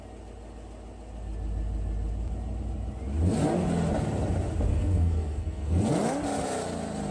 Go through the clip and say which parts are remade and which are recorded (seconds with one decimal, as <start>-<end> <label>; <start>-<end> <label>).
0.0-4.7 recorded; 4.7-5.9 remade; 5.9-7.1 recorded